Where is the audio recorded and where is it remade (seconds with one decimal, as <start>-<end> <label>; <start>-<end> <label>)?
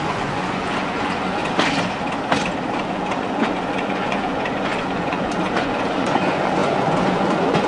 0.0-1.4 remade; 1.4-2.8 recorded; 2.8-7.7 remade